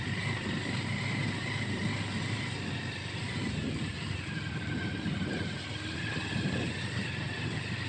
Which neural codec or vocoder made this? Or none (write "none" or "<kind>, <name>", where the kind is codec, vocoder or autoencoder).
none